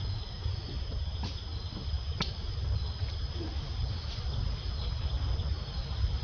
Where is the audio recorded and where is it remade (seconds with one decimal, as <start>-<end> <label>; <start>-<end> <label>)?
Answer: 0.0-6.2 recorded